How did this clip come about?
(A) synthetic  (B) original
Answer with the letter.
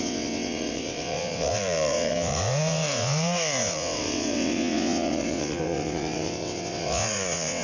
A